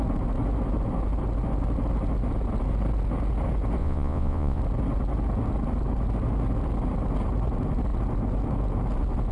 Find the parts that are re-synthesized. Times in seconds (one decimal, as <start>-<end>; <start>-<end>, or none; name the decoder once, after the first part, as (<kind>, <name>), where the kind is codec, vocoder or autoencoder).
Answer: 3.8-4.6 (vocoder, Vocos)